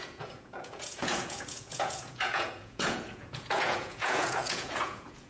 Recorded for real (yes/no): no